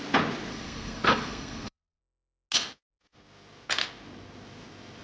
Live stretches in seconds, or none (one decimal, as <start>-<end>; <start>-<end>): 0.0-0.5; 2.0-5.0